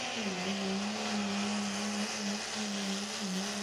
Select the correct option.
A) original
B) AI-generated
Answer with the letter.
A